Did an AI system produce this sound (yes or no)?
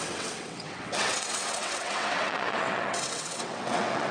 yes